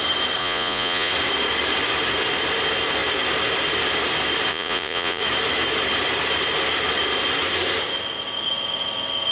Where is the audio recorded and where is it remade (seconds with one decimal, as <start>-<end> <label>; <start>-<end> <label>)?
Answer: 0.0-0.4 recorded; 0.4-1.1 remade; 1.1-4.5 recorded; 4.5-5.2 remade; 5.2-9.3 recorded